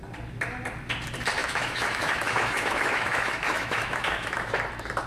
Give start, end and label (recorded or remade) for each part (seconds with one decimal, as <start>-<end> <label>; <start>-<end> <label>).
0.0-1.4 recorded; 1.4-4.5 remade; 4.5-5.1 recorded